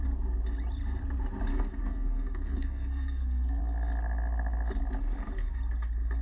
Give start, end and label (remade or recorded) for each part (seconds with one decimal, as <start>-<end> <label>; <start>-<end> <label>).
0.0-1.5 recorded; 1.5-3.6 remade; 3.6-6.2 recorded